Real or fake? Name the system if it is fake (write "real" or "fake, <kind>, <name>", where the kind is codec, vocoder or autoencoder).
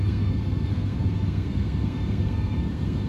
fake, codec, SNAC